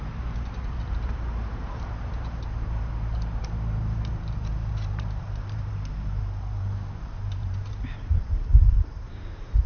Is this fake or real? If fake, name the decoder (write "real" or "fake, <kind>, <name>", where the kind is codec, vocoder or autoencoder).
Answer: fake, vocoder, BigVGAN v2